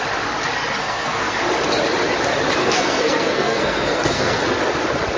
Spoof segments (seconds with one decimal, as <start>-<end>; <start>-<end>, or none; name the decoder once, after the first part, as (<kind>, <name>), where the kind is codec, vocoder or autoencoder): 0.8-1.4 (codec, SNAC); 2.6-4.4